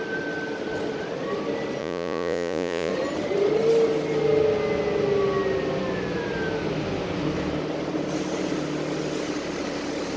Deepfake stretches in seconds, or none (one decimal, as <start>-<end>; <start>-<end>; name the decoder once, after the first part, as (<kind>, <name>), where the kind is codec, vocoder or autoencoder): 1.8-2.9 (vocoder, Vocos)